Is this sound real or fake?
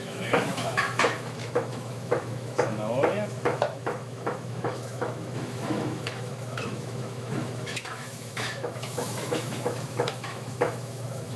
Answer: fake